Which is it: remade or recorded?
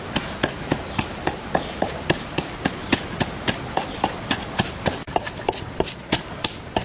recorded